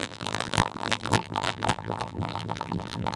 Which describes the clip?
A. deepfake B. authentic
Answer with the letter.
A